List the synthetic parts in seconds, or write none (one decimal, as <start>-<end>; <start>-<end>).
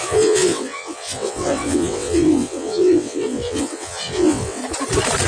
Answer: 0.0-4.6